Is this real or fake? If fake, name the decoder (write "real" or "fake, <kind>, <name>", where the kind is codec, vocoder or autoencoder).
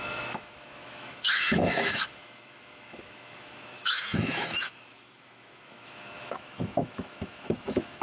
fake, autoencoder, DAC-VAE